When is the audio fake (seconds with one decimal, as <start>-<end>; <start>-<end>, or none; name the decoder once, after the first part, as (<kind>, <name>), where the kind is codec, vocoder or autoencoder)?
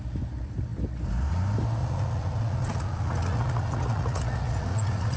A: 1.8-5.2 (vocoder, Vocos)